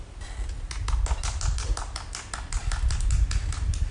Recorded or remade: recorded